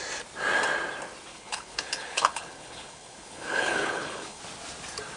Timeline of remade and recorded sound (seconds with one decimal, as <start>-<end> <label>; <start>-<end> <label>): 0.0-1.3 recorded; 1.3-4.4 remade; 4.4-5.2 recorded